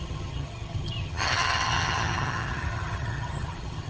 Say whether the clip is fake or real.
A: fake